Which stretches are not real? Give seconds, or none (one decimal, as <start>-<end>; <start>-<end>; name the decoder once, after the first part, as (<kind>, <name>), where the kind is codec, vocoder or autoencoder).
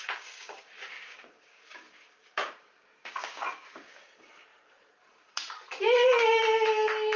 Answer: 0.0-4.0 (codec, DAC)